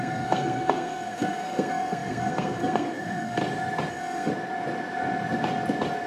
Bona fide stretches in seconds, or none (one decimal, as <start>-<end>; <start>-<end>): 3.4-3.9; 4.3-6.1